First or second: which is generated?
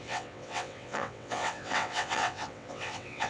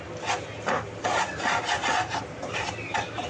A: first